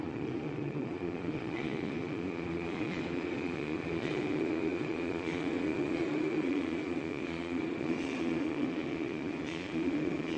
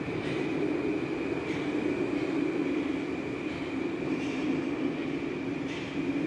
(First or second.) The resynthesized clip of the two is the first